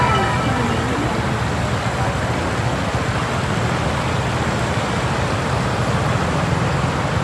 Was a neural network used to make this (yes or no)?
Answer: no